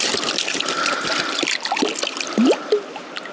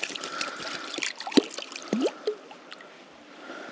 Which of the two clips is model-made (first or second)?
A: second